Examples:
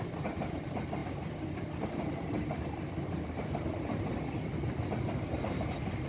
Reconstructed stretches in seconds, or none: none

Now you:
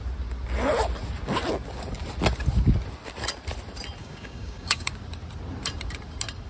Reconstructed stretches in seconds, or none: 4.0-4.9 (codec, DAC)

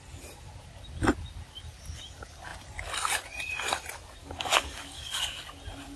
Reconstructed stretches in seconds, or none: 4.2-5.4 (codec, DAC)

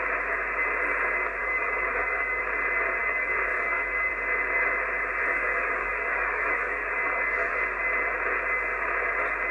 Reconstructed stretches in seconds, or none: 1.4-2.4 (codec, DAC); 3.0-4.1; 5.2-7.5

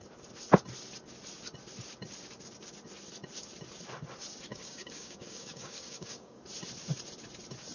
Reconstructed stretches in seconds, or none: 4.5-6.4 (codec, DAC)

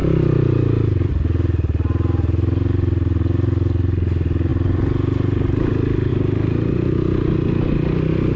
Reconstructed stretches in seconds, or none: none

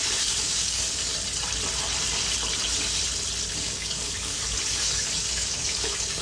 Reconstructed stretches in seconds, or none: 0.0-1.1 (codec, DAC); 3.5-6.2

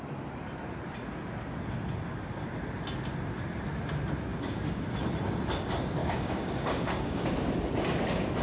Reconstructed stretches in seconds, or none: 4.3-4.9 (codec, DAC); 6.0-7.3